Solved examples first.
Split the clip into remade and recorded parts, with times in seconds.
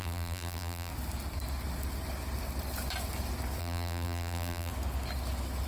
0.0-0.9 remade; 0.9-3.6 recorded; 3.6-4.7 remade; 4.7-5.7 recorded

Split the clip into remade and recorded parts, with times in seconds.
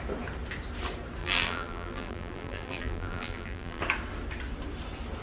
0.0-1.2 recorded; 1.2-3.8 remade; 3.8-5.2 recorded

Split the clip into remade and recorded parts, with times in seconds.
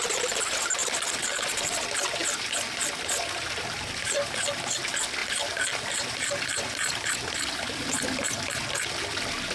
0.0-0.8 recorded; 0.8-1.6 remade; 1.6-5.2 recorded; 5.2-8.5 remade; 8.5-9.5 recorded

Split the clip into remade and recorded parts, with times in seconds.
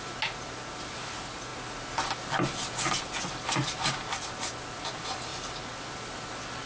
0.0-6.7 recorded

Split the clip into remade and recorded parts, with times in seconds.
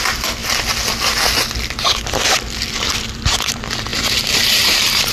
0.0-3.9 recorded; 3.9-5.1 remade